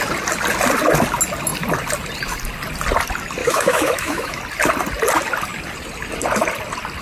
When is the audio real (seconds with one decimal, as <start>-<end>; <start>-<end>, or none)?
0.0-3.4; 4.4-7.0

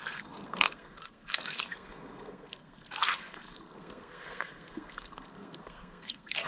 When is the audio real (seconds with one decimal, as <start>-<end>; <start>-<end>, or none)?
none

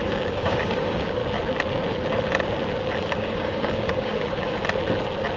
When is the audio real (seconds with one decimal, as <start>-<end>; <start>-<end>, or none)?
1.2-3.0; 4.6-5.4

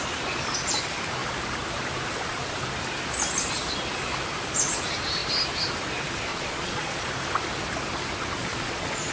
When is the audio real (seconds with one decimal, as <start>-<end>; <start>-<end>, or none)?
0.0-6.3; 7.1-8.4

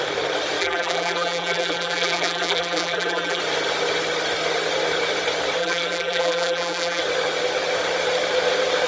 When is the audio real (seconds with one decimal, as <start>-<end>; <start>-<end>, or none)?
0.0-0.6; 3.4-5.6; 7.0-8.9

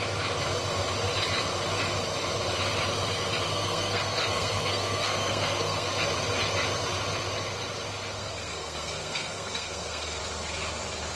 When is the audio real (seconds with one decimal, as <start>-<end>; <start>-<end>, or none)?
0.0-3.5; 5.9-8.2; 10.2-11.2